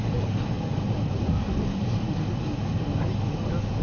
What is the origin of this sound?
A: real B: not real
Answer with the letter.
A